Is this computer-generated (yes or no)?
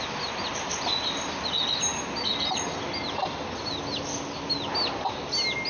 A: no